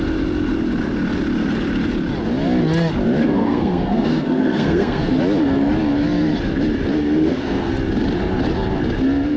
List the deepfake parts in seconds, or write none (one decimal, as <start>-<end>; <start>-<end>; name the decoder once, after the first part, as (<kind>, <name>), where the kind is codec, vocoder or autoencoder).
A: 3.2-5.2 (codec, SNAC); 6.9-7.7

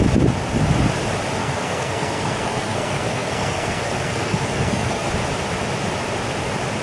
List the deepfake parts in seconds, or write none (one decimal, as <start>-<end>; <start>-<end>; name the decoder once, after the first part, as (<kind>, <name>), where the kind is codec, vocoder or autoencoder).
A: 1.4-5.1 (codec, SNAC)